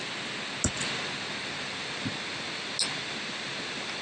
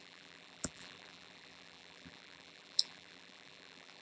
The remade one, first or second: second